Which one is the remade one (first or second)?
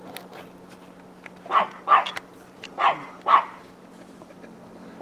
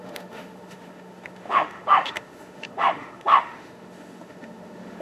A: second